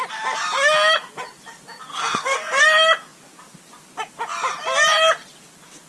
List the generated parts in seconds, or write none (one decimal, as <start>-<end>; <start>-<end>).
1.9-2.6